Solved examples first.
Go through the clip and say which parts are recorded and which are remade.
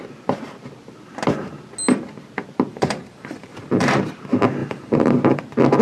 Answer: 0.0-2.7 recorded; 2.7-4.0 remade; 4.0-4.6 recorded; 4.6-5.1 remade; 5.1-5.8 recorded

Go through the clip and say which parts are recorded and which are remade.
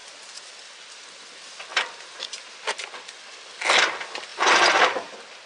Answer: 0.0-1.7 recorded; 1.7-2.8 remade; 2.8-4.3 recorded; 4.3-5.1 remade; 5.1-5.5 recorded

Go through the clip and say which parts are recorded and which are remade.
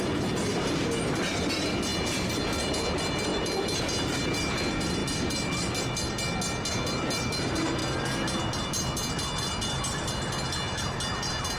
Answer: 0.0-3.3 recorded; 3.3-3.8 remade; 3.8-11.6 recorded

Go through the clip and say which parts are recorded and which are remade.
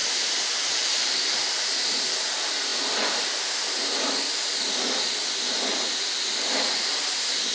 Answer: 0.0-2.2 remade; 2.2-7.5 recorded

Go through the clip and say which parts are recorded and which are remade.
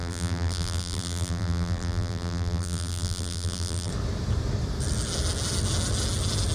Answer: 0.0-3.9 remade; 3.9-6.5 recorded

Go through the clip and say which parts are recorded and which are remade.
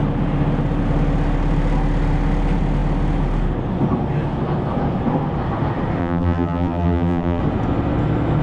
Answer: 0.0-6.0 recorded; 6.0-7.4 remade; 7.4-8.4 recorded